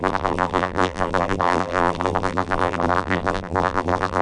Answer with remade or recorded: remade